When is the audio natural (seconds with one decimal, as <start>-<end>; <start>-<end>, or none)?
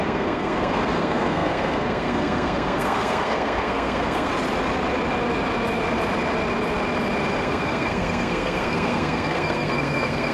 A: 4.3-7.4